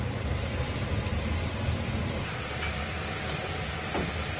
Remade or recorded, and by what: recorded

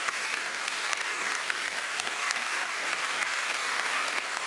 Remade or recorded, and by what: remade, codec, DAC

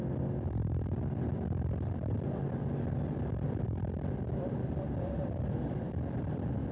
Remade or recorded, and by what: recorded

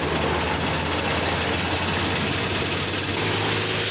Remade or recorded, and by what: recorded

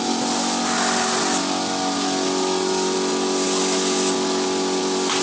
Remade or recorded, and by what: recorded